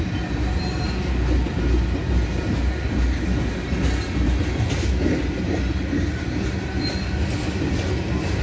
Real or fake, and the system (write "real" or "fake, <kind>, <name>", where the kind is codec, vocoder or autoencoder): real